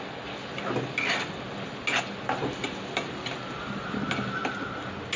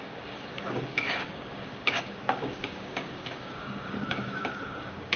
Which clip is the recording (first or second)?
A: first